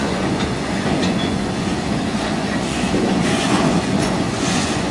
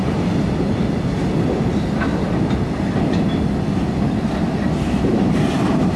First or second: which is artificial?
first